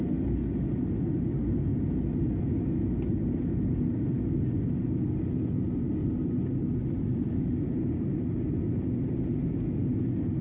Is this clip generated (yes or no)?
no